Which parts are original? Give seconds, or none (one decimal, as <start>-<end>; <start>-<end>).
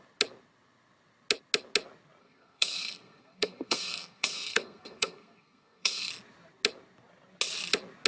0.0-2.2; 6.1-8.1